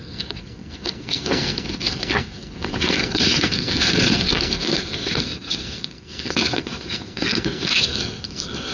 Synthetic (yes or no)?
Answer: yes